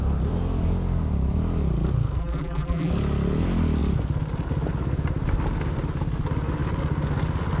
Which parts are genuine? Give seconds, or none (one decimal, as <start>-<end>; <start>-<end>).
0.0-2.2; 2.9-7.6